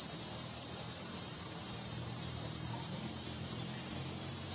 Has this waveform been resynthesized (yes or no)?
yes